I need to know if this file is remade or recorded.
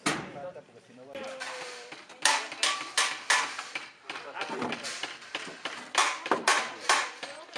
remade